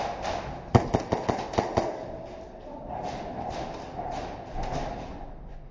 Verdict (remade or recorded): recorded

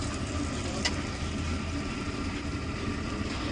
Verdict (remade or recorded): recorded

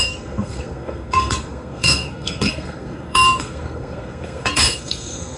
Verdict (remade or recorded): remade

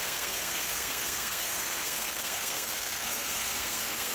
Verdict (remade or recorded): remade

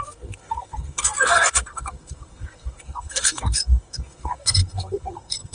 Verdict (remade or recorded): remade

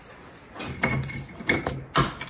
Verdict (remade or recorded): recorded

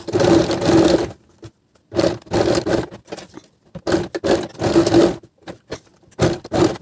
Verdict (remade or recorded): recorded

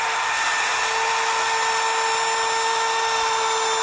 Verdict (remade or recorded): recorded